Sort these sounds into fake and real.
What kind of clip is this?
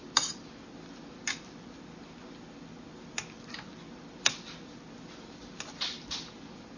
real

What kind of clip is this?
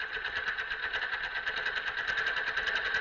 real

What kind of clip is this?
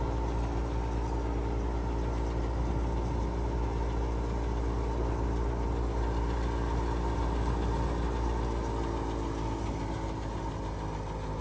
real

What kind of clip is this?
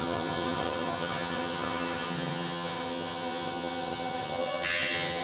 fake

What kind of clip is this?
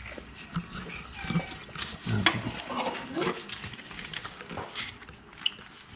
real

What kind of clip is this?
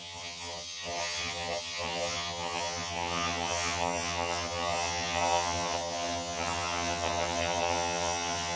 fake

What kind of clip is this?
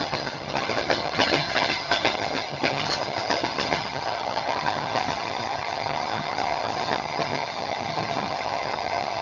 fake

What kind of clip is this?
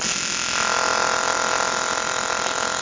real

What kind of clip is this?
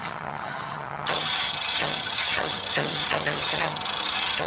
fake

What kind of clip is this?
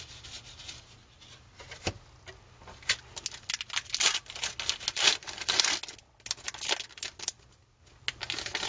real